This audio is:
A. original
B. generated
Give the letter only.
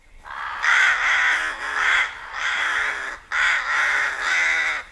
A